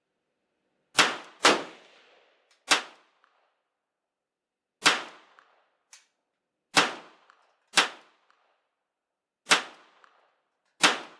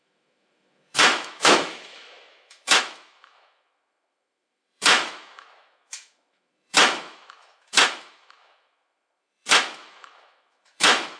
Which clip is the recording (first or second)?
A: first